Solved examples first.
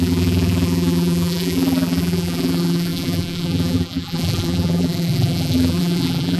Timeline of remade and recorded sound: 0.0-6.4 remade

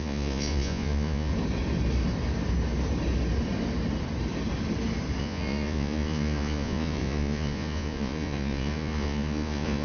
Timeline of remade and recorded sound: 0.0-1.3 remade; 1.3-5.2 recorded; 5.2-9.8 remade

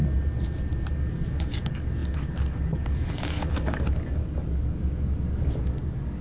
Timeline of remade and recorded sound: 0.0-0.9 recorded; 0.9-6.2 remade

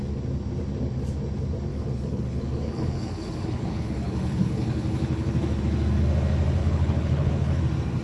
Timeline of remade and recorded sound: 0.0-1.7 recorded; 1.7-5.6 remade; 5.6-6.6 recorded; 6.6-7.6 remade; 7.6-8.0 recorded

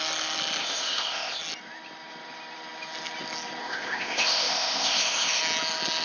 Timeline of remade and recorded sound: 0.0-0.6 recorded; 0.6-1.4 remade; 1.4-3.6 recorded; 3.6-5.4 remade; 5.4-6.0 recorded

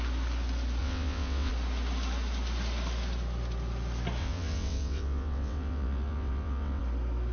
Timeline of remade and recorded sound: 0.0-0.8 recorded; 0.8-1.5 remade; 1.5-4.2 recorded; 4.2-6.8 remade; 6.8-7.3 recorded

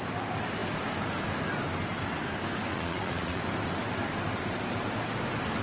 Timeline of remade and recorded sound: 0.0-2.7 recorded; 2.7-3.4 remade; 3.4-5.6 recorded

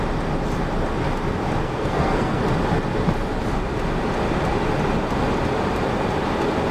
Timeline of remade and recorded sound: 0.0-1.6 recorded; 1.6-2.4 remade; 2.4-6.7 recorded